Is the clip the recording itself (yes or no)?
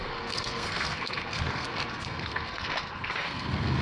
no